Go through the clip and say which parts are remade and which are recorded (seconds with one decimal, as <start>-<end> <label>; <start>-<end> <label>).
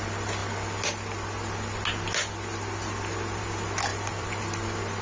0.0-3.9 recorded; 3.9-4.4 remade; 4.4-5.0 recorded